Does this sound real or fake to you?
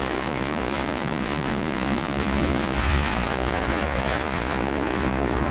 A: fake